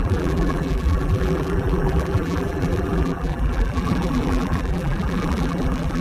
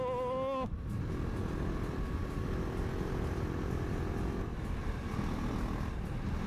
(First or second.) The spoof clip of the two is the first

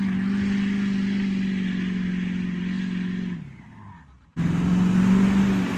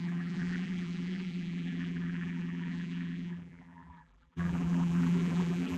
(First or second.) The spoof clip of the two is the second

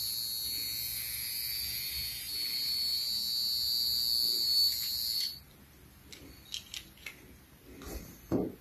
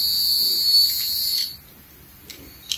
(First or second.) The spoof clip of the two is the second